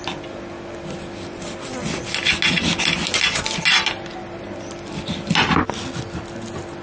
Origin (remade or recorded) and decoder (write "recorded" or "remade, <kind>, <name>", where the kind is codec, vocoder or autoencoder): recorded